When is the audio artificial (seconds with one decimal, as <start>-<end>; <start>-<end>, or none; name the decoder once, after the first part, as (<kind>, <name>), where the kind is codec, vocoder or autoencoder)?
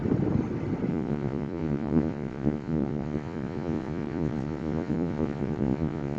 0.9-6.2 (vocoder, Vocos)